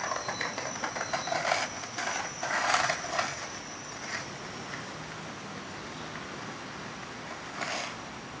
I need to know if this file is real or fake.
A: real